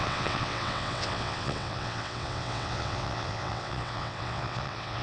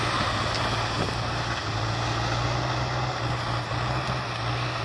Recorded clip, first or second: second